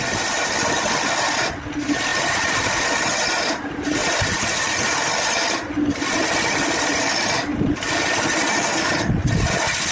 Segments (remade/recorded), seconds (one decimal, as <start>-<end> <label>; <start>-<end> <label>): 0.0-2.1 recorded; 2.1-2.8 remade; 2.8-4.0 recorded; 4.0-4.9 remade; 4.9-9.9 recorded